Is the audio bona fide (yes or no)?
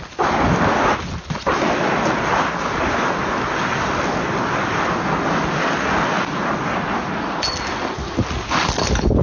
yes